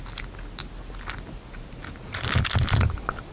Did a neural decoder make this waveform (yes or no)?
no